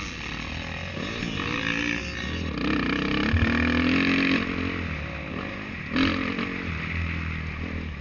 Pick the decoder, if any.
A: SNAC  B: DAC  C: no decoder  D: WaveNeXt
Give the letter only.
C